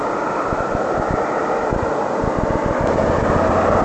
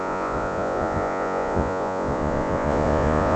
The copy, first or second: second